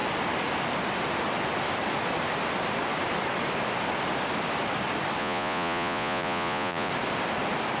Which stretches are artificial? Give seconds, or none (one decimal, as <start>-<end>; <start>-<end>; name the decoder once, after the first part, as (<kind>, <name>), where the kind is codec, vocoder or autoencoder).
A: 5.2-6.9 (vocoder, Vocos)